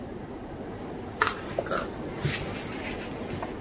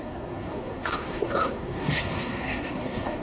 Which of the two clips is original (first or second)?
first